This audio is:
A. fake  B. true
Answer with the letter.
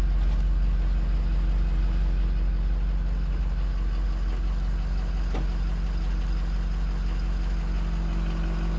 B